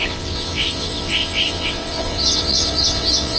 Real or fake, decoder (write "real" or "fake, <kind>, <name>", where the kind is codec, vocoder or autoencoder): fake, vocoder, WaveNeXt